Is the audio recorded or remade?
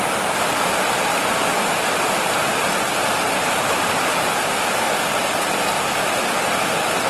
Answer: recorded